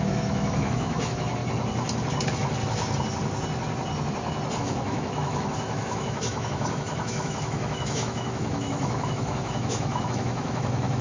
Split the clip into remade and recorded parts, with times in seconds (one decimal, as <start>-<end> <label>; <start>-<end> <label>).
0.0-1.4 remade; 1.4-4.6 recorded; 4.6-11.0 remade